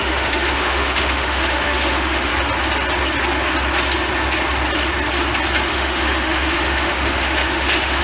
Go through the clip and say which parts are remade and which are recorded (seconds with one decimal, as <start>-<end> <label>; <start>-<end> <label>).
0.0-2.3 remade; 2.3-5.7 recorded; 5.7-8.0 remade